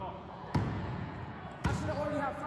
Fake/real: fake